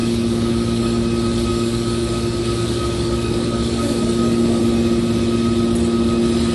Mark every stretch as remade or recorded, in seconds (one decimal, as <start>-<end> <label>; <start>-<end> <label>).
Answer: 0.0-1.0 remade; 1.0-1.5 recorded; 1.5-4.6 remade; 4.6-6.5 recorded